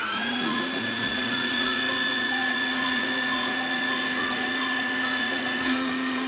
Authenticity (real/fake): fake